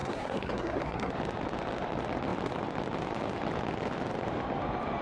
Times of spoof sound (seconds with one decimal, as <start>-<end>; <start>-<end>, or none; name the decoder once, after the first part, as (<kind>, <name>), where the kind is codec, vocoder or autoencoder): 0.0-1.1 (codec, SNAC)